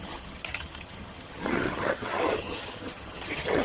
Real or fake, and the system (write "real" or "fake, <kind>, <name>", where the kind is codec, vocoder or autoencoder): fake, vocoder, HiFi-GAN